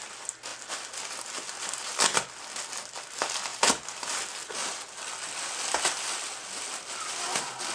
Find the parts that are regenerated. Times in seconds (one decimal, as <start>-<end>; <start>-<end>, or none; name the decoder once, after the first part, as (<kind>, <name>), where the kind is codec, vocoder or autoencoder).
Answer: none